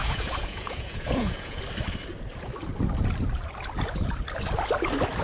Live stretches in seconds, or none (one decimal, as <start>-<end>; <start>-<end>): 1.6-5.2